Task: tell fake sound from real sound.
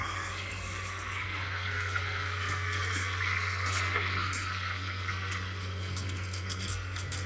fake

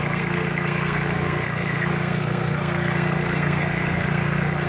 fake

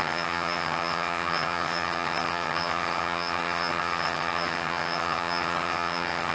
fake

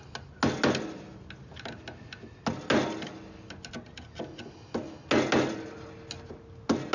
real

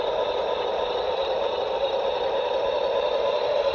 fake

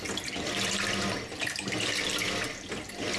real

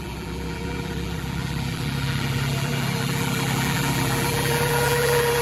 fake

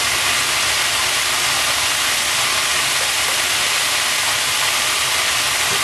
real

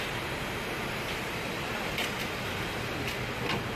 real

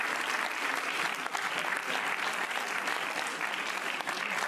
real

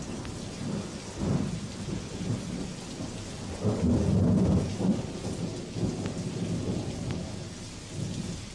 real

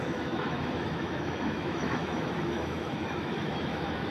fake